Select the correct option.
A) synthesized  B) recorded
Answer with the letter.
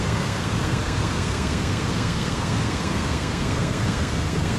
A